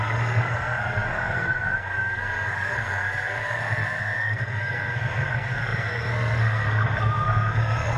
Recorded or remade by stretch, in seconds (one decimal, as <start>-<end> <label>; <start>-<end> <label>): 0.0-8.0 remade